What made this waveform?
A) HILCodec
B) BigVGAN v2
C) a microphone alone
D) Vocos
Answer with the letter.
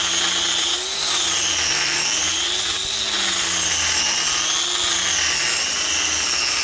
C